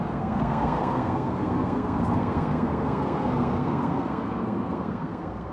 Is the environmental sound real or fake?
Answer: fake